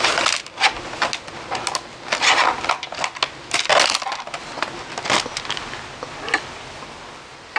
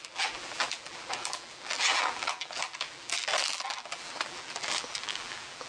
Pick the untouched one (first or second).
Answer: first